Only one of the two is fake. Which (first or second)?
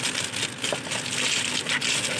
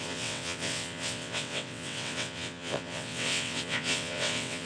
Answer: second